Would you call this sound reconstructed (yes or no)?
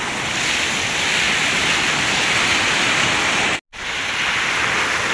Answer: no